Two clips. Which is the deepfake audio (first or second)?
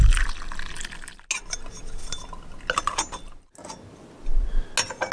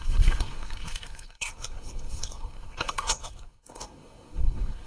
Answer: second